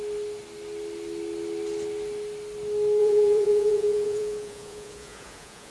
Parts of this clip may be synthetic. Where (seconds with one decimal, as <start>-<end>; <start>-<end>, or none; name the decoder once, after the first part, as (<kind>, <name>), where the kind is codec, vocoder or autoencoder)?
3.0-5.7 (vocoder, Vocos)